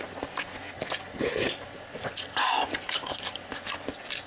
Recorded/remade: recorded